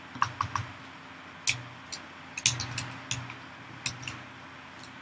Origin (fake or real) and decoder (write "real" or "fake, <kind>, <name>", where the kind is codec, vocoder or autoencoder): real